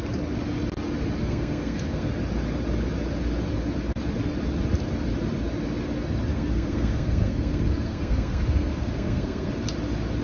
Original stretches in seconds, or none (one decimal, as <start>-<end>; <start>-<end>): 0.0-1.2; 2.1-6.3; 9.5-10.2